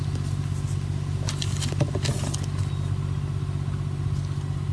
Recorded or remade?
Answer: recorded